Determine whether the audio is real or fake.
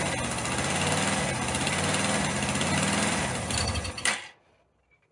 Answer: real